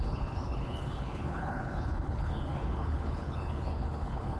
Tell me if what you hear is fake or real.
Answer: fake